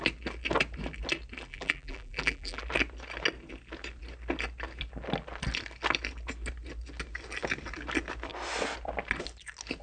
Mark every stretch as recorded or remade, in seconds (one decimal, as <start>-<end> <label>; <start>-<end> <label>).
0.0-1.5 recorded; 1.5-2.6 remade; 2.6-9.8 recorded